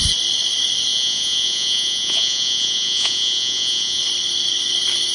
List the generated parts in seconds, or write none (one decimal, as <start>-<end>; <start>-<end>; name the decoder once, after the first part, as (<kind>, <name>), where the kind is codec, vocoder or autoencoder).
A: 0.9-4.0 (vocoder, Vocos)